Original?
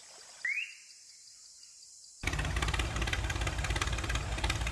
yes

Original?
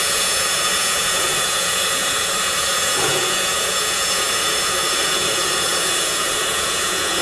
no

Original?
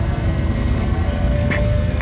no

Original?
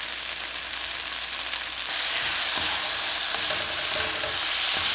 yes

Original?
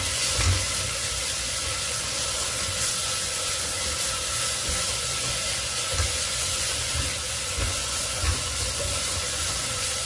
no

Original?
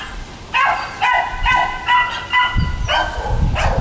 yes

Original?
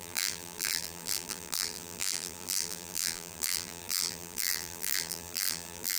no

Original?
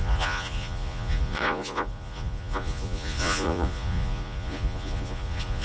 no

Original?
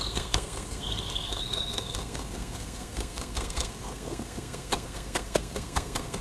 no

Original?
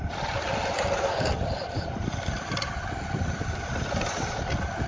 yes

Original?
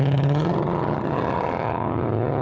no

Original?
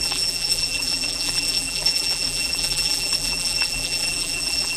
no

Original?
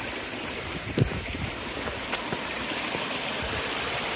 no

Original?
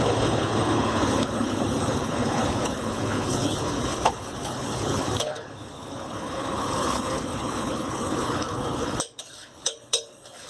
no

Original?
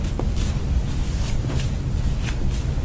yes